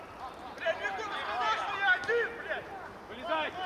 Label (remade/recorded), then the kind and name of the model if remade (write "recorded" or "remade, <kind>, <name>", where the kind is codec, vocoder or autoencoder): recorded